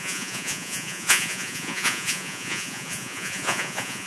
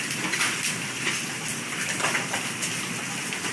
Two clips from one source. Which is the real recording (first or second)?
second